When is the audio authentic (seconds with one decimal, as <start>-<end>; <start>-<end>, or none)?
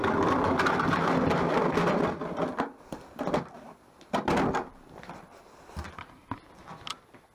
0.0-4.4